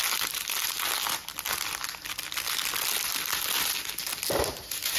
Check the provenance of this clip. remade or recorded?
recorded